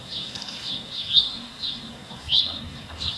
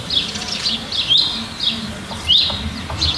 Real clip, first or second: second